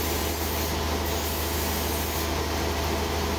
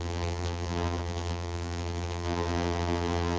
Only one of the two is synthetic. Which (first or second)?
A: second